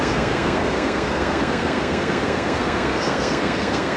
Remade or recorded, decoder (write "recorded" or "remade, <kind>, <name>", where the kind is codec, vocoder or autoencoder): remade, codec, SNAC